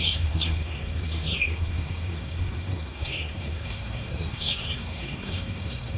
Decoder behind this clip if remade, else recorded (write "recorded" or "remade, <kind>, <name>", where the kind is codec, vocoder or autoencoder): remade, codec, SNAC